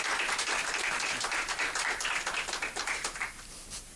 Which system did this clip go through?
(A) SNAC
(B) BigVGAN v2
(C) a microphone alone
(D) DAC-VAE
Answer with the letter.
B